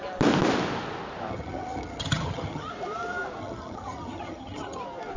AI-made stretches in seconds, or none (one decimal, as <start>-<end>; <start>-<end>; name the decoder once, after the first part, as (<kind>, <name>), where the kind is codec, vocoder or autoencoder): 1.3-2.7 (vocoder, HiFi-GAN); 3.4-4.8